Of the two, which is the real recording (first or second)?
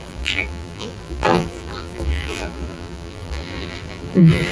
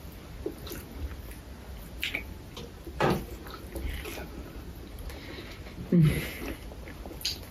second